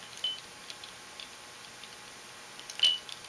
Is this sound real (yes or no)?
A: yes